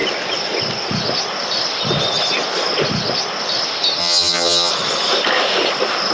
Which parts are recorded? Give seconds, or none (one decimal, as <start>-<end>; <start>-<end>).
0.0-4.0; 4.7-6.1

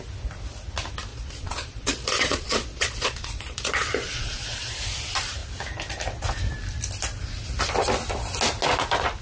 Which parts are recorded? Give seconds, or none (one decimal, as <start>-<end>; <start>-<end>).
0.0-1.1; 4.7-9.2